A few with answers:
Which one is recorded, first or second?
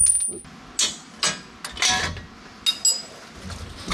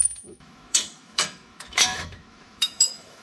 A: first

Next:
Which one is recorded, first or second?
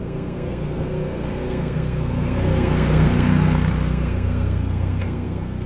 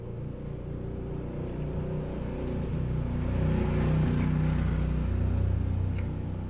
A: second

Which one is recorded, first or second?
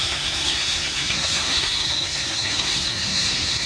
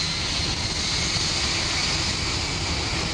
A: second